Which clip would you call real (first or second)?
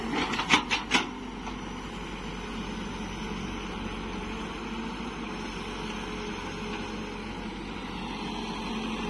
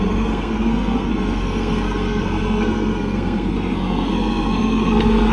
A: first